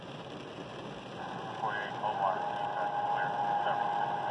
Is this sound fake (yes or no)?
no